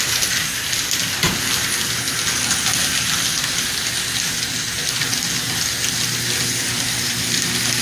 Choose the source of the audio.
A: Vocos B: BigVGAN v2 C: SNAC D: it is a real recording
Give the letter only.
D